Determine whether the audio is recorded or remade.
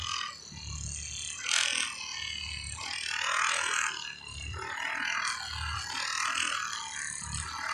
recorded